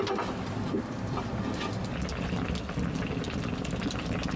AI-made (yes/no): no